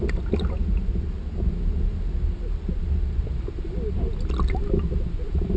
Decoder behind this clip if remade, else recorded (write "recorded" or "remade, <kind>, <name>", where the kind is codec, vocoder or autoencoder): recorded